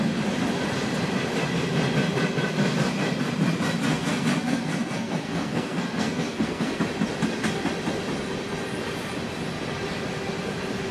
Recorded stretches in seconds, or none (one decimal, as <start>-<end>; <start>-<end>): 0.0-3.9; 6.8-10.9